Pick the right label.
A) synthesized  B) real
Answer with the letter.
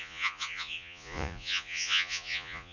A